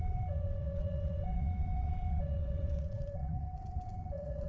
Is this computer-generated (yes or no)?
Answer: yes